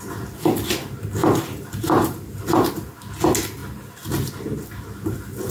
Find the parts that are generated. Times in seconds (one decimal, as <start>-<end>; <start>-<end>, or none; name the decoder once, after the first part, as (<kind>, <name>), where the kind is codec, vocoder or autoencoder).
1.2-2.7 (vocoder, BigVGAN v2)